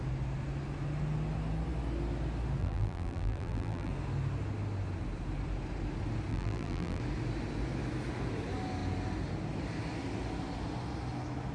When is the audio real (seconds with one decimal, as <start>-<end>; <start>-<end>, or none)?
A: 0.0-2.6; 3.9-6.3; 7.0-11.5